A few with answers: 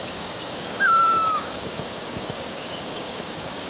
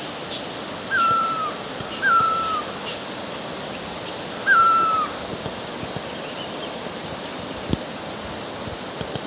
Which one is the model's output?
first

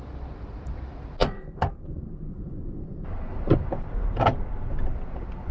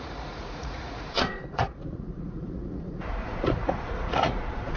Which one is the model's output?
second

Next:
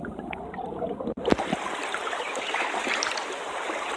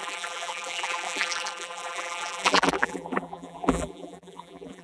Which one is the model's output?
second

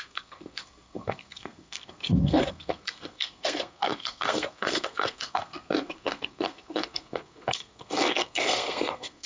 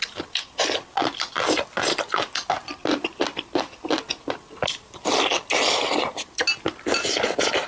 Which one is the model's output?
first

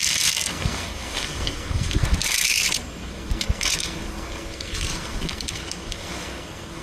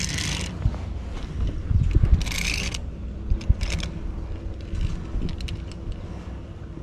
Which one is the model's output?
first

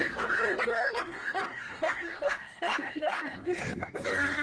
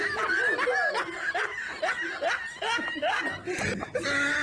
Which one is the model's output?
first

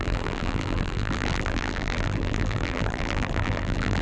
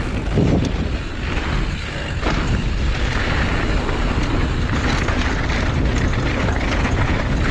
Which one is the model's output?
first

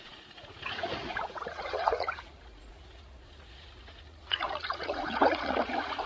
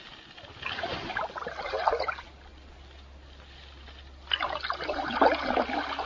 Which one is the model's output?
first